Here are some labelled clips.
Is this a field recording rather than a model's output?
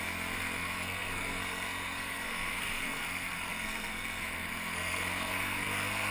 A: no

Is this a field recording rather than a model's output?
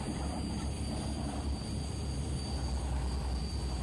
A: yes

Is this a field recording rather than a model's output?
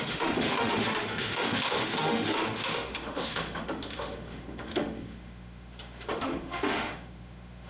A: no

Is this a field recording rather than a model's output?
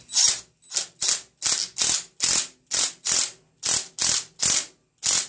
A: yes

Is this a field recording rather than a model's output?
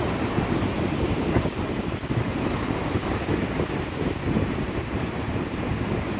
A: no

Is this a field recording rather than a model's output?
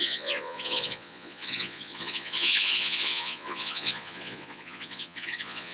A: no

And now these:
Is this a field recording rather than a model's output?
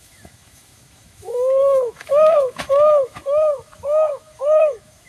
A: no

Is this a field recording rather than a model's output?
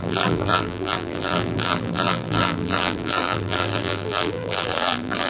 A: no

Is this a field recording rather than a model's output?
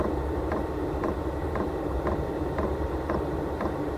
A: no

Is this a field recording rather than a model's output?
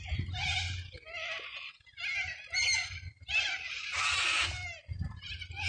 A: yes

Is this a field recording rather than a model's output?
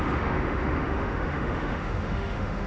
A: no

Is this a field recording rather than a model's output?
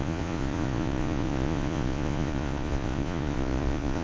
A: no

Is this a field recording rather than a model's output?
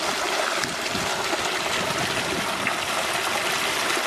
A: yes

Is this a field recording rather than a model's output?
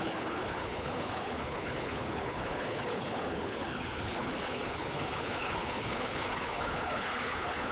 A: no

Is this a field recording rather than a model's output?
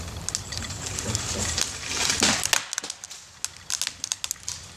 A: yes